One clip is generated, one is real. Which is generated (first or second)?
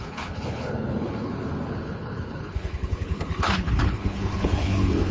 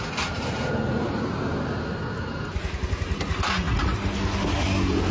first